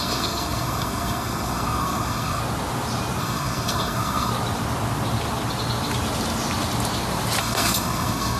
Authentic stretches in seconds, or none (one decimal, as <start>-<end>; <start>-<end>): 2.4-3.2; 4.3-7.4